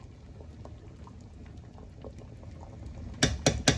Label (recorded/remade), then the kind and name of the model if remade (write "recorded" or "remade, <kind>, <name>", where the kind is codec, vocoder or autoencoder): recorded